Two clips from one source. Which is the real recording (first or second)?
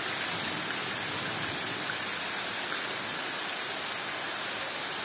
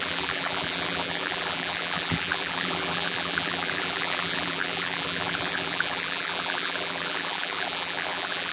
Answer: first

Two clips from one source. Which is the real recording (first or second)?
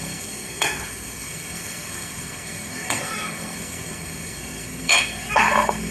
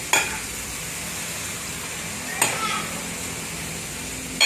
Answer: second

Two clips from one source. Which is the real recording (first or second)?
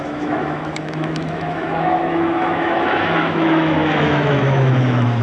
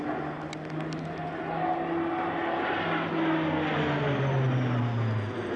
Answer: second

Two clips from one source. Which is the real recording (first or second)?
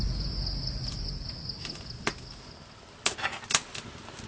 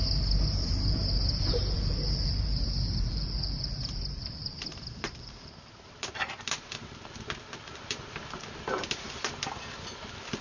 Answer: first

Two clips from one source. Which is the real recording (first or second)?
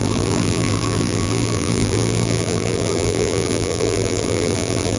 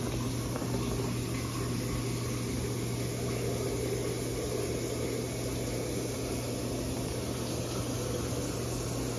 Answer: second